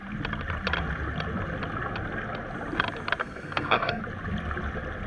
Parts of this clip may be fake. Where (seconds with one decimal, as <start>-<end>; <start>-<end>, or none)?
3.2-4.0